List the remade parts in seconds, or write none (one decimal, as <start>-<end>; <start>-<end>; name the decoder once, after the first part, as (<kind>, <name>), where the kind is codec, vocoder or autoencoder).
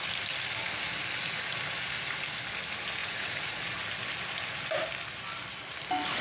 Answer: 3.0-3.8 (vocoder, Vocos)